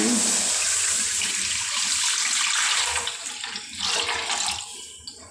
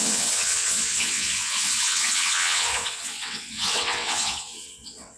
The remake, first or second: second